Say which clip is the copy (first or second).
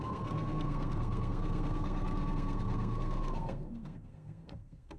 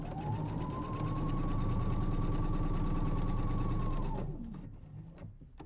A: first